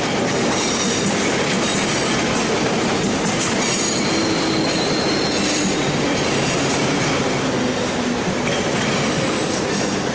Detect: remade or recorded recorded